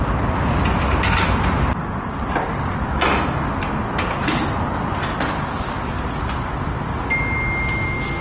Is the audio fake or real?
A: real